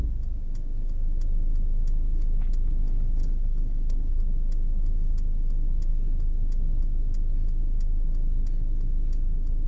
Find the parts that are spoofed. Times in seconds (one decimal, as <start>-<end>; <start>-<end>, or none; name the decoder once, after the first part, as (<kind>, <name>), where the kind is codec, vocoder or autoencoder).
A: 3.2-4.2 (codec, HILCodec)